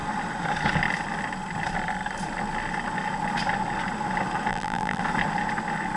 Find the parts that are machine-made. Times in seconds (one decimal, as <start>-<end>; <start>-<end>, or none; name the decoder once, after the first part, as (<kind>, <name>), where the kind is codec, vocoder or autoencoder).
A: 4.5-5.0 (vocoder, BigVGAN v2)